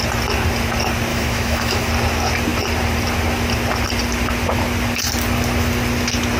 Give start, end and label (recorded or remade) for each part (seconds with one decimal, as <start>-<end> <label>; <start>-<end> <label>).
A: 0.0-1.1 recorded; 1.1-1.9 remade; 1.9-6.4 recorded